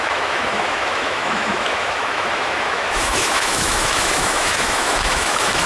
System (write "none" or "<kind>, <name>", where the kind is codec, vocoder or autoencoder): autoencoder, DAC-VAE